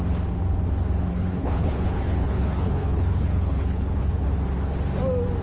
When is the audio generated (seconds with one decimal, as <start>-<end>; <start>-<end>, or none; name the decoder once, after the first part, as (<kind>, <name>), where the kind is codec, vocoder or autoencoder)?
1.1-4.3 (codec, HILCodec)